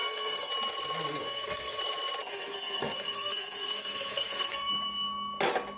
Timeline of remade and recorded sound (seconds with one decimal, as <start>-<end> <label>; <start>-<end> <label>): 0.0-0.5 remade; 0.5-1.2 recorded; 1.2-1.8 remade; 1.8-2.3 recorded; 2.3-4.7 remade; 4.7-5.8 recorded